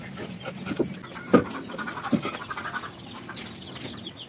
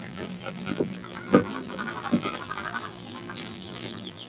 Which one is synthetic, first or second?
second